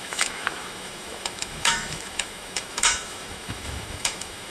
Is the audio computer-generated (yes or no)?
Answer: yes